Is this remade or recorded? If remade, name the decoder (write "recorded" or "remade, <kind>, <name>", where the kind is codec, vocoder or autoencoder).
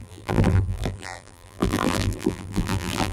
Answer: remade, vocoder, BigVGAN v2